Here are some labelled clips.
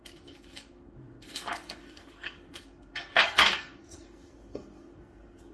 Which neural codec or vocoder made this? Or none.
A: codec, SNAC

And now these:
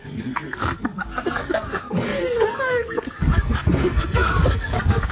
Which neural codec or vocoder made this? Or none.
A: codec, SNAC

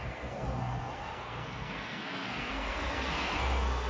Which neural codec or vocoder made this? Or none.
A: codec, SNAC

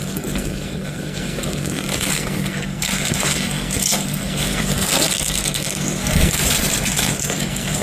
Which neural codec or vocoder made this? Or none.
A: codec, SNAC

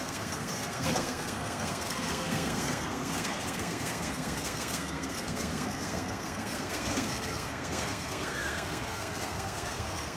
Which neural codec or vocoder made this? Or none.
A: codec, SNAC